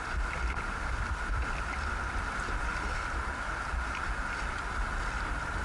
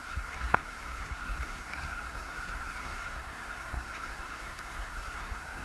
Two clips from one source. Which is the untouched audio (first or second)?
first